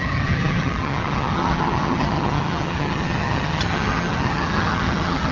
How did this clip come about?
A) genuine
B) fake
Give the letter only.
B